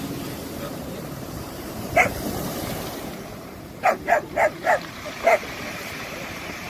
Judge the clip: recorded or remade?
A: remade